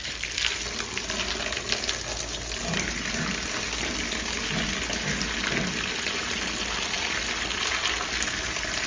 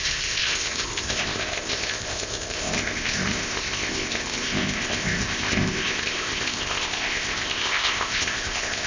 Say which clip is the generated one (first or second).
second